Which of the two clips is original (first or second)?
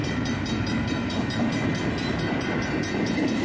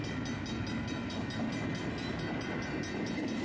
second